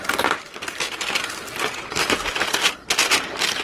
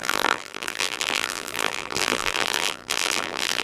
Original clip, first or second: first